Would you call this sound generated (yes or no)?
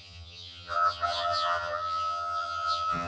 yes